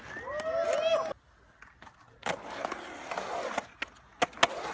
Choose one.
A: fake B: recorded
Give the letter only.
B